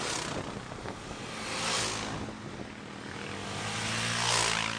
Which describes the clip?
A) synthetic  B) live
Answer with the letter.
B